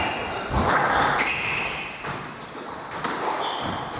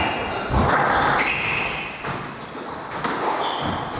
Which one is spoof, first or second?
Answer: first